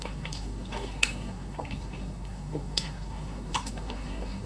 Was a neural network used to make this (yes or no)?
yes